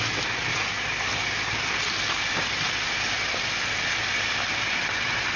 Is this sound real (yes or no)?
yes